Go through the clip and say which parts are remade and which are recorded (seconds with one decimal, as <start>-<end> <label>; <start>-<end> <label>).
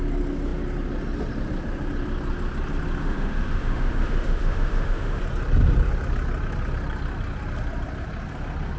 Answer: 0.0-3.0 recorded; 3.0-5.2 remade; 5.2-8.8 recorded